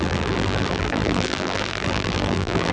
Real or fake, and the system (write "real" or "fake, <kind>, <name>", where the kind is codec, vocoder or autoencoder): fake, vocoder, BigVGAN v2